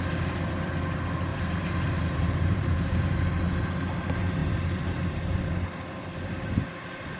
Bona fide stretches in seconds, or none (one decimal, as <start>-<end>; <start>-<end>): 0.0-1.3; 3.3-4.4; 5.1-7.2